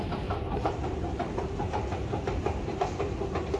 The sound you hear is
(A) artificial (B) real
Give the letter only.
A